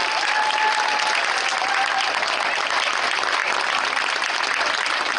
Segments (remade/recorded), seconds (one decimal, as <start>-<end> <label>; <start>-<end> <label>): 0.0-5.2 recorded